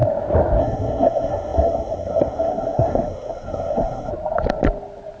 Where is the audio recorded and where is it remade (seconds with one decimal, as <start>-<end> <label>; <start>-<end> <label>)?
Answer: 0.0-0.6 recorded; 0.6-4.1 remade; 4.1-5.2 recorded